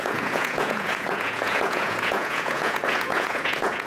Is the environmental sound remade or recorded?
remade